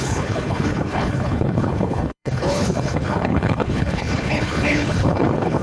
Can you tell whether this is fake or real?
fake